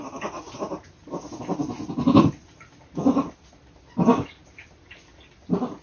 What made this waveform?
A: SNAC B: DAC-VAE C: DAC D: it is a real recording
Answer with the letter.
D